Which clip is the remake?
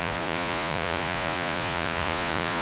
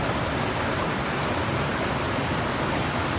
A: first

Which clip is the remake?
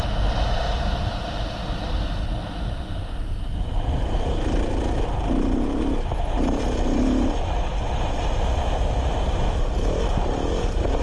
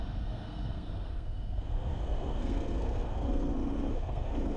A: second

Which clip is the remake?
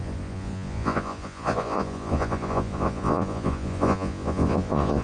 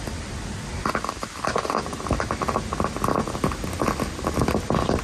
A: first